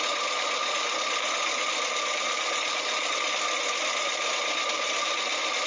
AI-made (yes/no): no